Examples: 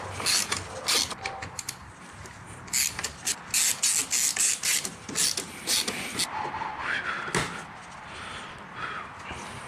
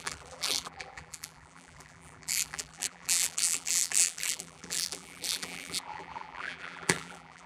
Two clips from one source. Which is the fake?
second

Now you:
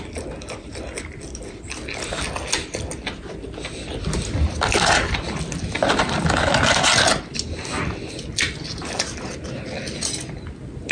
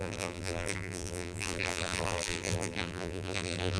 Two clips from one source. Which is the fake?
second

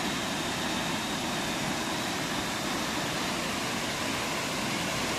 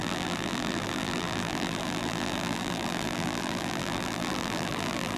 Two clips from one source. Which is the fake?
second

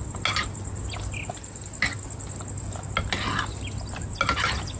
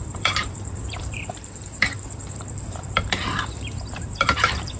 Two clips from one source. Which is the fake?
second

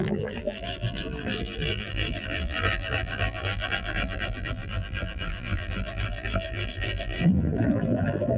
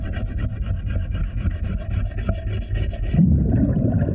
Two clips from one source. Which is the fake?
first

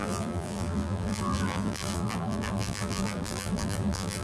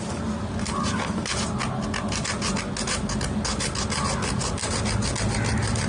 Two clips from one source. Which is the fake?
first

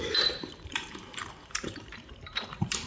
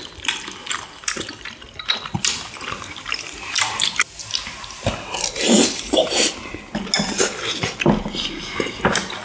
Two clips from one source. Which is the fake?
first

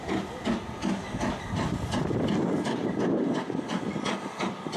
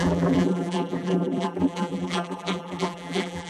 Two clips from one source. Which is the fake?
second